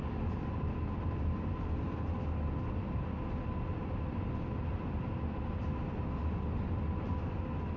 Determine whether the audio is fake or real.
real